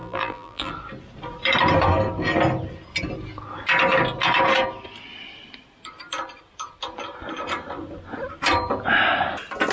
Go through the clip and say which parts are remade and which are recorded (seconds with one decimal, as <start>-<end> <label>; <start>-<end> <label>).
0.0-0.7 remade; 0.7-9.7 recorded